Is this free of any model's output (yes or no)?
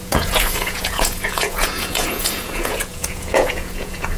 no